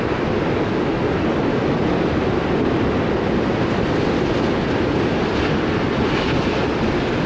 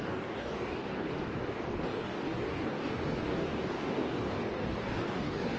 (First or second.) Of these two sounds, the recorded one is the first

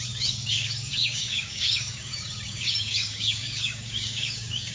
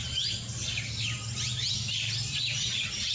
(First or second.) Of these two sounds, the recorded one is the second